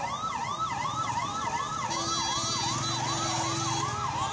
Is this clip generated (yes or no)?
no